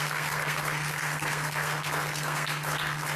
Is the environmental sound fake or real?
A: fake